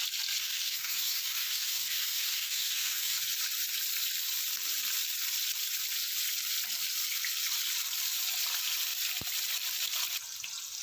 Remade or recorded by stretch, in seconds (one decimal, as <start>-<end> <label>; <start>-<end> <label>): 0.0-0.4 recorded; 0.4-3.2 remade; 3.2-10.8 recorded